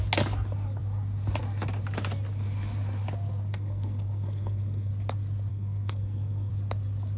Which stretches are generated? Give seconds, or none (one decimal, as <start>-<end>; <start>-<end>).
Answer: 3.5-4.9; 5.5-6.5